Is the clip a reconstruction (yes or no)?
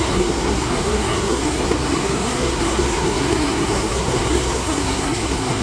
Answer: yes